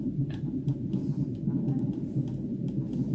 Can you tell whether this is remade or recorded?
recorded